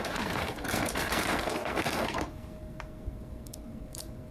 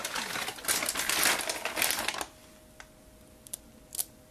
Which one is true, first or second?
second